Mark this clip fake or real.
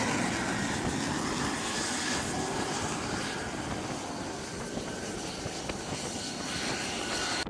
real